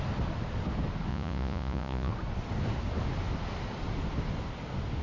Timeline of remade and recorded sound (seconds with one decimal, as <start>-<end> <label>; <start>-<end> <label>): 0.0-1.1 recorded; 1.1-2.1 remade; 2.1-5.0 recorded